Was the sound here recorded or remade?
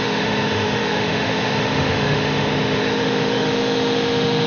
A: remade